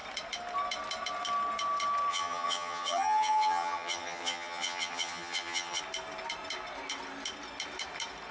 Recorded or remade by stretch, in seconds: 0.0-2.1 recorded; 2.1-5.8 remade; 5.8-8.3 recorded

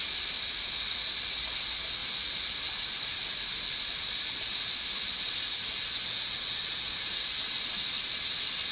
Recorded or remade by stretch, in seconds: 0.0-8.7 recorded

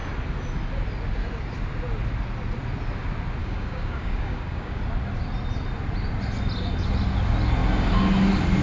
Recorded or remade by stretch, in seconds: 0.0-3.4 recorded; 3.4-4.8 remade; 4.8-8.6 recorded

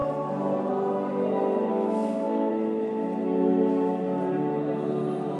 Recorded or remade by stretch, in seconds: 0.0-1.7 recorded; 1.7-2.5 remade; 2.5-5.4 recorded

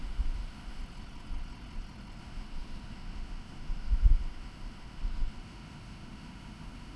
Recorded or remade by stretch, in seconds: 0.0-0.8 remade; 0.8-2.2 recorded; 2.2-7.0 remade

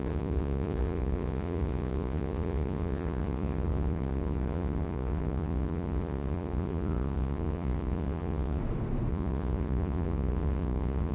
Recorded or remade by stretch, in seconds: 0.0-8.6 remade; 8.6-9.1 recorded; 9.1-11.1 remade